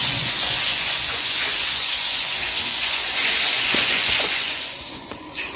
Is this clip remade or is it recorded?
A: remade